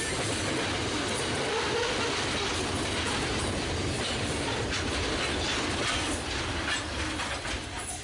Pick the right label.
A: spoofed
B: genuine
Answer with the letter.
B